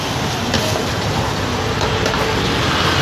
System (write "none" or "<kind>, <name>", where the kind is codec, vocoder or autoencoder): none